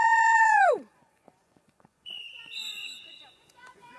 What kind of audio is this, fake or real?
fake